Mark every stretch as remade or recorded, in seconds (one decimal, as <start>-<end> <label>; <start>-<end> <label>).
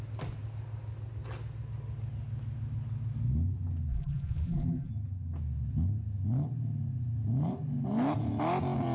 0.0-3.9 recorded; 3.9-4.9 remade; 4.9-8.9 recorded